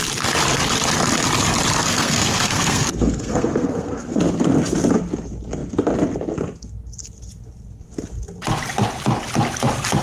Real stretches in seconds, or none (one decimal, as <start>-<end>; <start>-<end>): 0.0-1.8; 4.2-10.0